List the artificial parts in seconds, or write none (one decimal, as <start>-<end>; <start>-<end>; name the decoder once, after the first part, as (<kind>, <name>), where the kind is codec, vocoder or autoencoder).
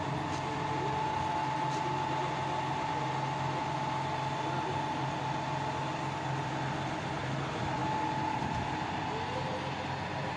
none